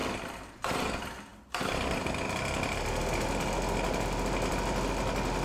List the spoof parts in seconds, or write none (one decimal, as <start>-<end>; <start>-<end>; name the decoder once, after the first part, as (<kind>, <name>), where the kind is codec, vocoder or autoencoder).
none